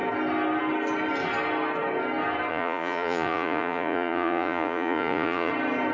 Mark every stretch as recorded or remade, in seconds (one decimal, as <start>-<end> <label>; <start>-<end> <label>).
0.0-2.5 recorded; 2.5-5.5 remade; 5.5-5.9 recorded